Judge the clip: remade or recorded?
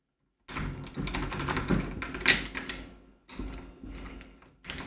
recorded